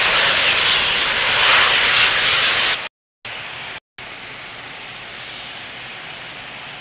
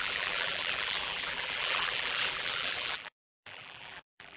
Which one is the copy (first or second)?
second